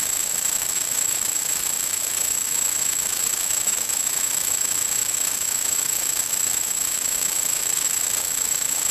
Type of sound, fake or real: fake